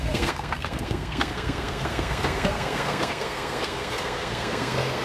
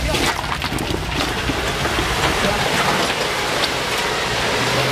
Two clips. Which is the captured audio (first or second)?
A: second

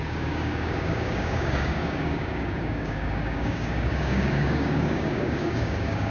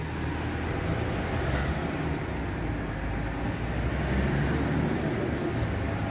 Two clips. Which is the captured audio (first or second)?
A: second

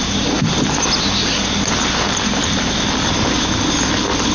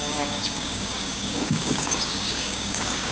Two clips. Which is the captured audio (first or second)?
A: first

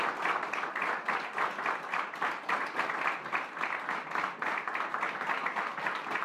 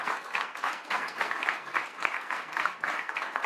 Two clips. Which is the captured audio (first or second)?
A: first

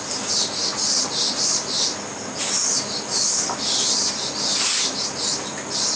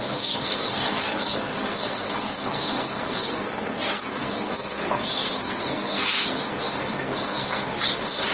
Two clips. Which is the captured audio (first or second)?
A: first